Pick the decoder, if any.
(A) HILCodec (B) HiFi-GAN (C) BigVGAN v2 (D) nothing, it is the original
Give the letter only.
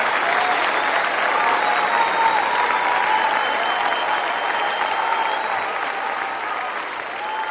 D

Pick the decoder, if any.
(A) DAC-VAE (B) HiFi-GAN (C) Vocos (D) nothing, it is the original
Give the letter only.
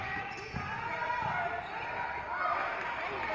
D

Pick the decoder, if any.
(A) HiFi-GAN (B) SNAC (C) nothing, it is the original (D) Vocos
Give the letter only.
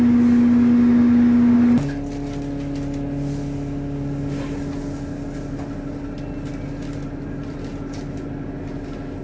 C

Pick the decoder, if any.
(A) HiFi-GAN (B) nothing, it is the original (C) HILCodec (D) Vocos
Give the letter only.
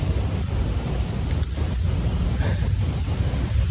B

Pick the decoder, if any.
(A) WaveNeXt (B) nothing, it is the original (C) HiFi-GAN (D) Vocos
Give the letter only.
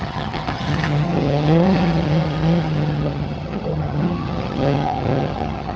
C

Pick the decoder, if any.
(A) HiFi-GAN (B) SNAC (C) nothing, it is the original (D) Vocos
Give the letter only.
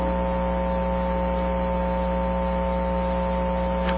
C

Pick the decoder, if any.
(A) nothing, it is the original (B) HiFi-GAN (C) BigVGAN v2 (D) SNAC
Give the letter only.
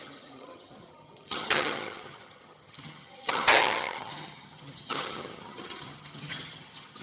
B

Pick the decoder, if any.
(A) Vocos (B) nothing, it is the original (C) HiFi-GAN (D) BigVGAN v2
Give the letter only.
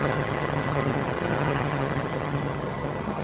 C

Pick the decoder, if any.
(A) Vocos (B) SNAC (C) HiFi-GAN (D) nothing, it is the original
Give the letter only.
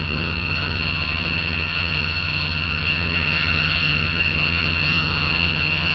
C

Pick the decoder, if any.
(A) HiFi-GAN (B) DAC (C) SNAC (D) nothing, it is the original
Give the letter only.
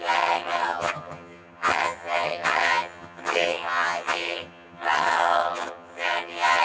A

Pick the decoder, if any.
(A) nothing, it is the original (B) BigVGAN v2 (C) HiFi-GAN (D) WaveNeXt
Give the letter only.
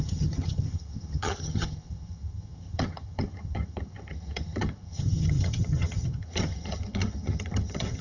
C